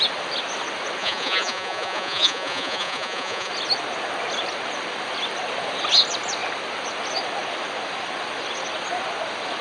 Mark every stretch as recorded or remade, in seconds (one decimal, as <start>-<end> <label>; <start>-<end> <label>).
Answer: 0.0-1.0 recorded; 1.0-3.5 remade; 3.5-9.6 recorded